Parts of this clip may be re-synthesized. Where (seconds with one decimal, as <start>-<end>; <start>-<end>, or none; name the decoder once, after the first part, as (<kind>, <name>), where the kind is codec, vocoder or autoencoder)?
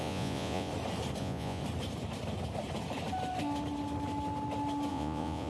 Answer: 0.0-0.7 (vocoder, Vocos); 1.2-1.6; 4.9-5.5